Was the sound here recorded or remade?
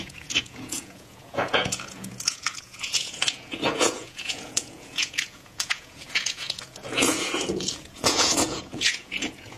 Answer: remade